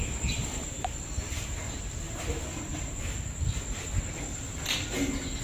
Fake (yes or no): no